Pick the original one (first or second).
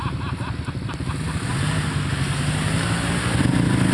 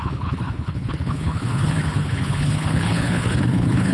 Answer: first